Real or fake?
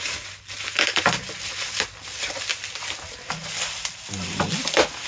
real